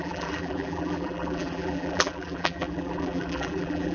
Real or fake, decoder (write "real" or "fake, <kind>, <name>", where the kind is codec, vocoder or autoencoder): fake, vocoder, BigVGAN v2